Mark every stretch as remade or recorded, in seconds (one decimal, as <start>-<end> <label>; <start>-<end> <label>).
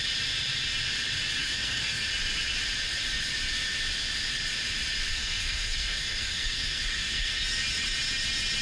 0.0-1.4 recorded; 1.4-2.1 remade; 2.1-5.1 recorded; 5.1-7.4 remade; 7.4-8.6 recorded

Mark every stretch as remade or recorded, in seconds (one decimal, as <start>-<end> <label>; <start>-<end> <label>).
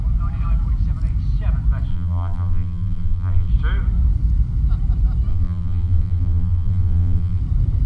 0.0-1.9 recorded; 1.9-3.5 remade; 3.5-5.3 recorded; 5.3-7.4 remade; 7.4-7.9 recorded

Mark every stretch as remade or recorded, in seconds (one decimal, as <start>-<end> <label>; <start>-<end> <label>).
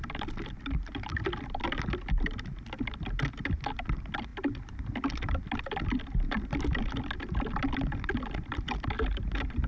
0.0-9.7 recorded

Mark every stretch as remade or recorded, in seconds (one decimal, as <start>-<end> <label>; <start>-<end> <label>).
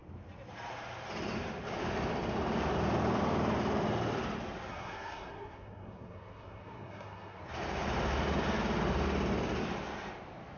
0.0-4.7 recorded; 4.7-7.4 remade; 7.4-10.6 recorded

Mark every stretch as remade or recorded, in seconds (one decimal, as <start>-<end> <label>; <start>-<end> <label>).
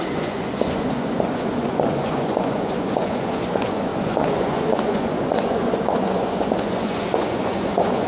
0.0-8.1 remade